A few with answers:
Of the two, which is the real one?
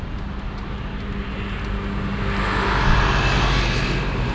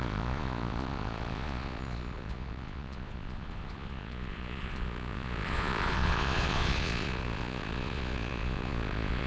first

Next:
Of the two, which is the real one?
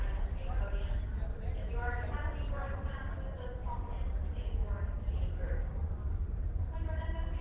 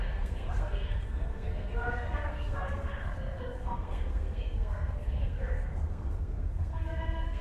first